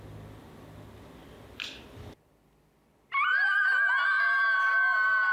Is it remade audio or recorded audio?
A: recorded